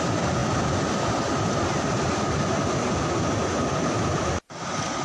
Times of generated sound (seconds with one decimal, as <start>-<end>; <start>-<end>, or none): none